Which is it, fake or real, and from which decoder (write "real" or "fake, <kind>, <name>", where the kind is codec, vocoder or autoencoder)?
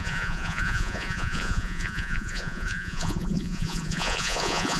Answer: fake, vocoder, Vocos